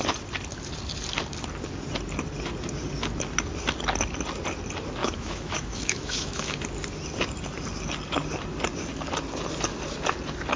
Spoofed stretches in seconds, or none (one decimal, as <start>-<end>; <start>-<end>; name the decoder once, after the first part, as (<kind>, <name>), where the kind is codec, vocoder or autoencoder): 5.0-6.6 (autoencoder, DAC-VAE)